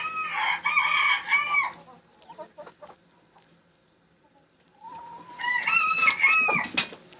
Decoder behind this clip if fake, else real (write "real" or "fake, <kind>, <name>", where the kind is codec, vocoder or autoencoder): real